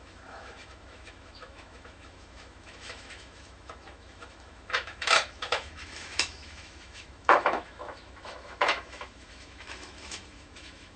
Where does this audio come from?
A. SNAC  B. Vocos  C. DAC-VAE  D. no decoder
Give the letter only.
C